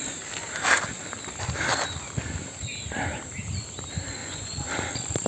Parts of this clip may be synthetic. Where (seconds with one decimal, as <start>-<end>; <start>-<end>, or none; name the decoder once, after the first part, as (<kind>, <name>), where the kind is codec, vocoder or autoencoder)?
4.2-4.7 (vocoder, Vocos)